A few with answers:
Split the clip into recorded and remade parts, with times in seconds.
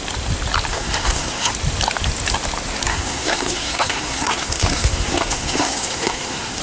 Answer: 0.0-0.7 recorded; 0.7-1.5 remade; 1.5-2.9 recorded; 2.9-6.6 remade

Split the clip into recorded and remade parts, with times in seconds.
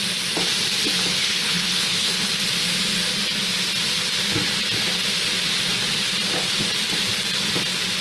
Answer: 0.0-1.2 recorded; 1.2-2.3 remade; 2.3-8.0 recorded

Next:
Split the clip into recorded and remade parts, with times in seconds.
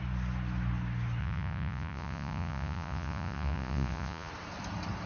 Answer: 0.0-1.2 recorded; 1.2-4.3 remade; 4.3-5.1 recorded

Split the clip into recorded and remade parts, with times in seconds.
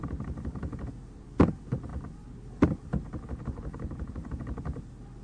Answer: 0.0-5.2 recorded